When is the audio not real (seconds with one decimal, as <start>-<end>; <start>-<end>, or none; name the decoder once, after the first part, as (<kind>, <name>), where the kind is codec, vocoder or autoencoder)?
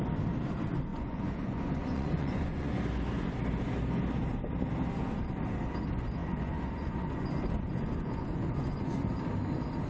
0.9-2.8 (vocoder, Vocos); 6.2-9.1